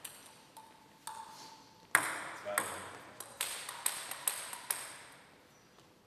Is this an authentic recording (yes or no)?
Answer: yes